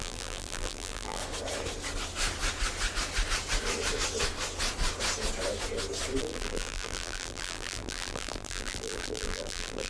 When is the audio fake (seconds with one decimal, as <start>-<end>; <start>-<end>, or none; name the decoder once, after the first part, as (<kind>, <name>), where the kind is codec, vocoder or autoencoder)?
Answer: 0.0-1.2 (vocoder, BigVGAN v2); 6.2-9.9